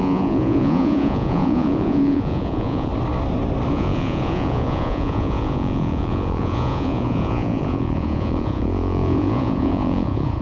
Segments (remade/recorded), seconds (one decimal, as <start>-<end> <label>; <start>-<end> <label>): 0.0-2.9 remade; 2.9-3.7 recorded; 3.7-10.4 remade